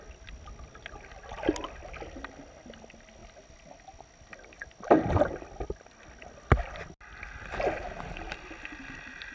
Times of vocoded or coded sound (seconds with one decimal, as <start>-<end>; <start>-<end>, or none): none